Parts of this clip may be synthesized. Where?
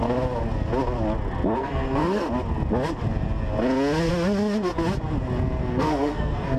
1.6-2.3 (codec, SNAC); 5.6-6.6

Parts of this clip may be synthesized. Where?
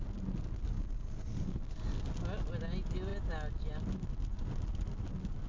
none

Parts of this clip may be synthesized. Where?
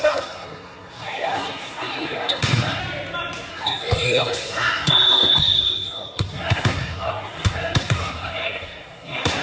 0.0-2.8 (codec, SNAC); 3.5-9.4